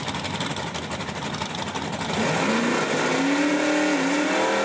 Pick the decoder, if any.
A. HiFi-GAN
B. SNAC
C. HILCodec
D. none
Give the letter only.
D